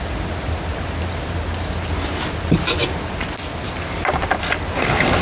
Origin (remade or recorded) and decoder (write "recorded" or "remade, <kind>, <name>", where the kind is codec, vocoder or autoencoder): recorded